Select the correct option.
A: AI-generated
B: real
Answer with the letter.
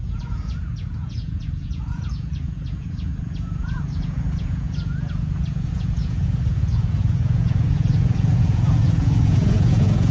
A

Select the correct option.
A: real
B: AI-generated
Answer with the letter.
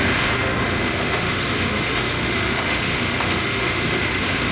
B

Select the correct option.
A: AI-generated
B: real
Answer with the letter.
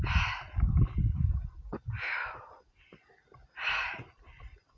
B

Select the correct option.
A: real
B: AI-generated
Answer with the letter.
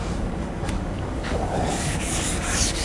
B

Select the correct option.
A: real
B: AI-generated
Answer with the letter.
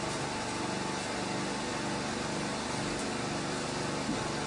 A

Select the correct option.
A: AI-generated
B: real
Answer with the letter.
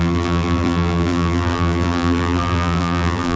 A